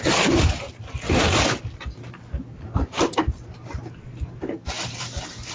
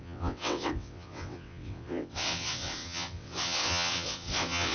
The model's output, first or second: second